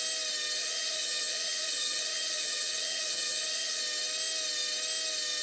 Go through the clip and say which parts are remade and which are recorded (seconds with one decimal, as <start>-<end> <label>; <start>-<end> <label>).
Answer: 0.0-0.6 recorded; 0.6-3.8 remade; 3.8-5.4 recorded